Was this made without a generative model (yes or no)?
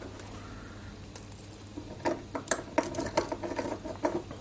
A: yes